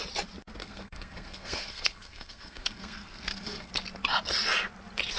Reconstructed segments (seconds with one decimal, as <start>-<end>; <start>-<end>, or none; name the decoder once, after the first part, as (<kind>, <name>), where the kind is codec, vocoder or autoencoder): 0.6-3.7 (codec, SNAC)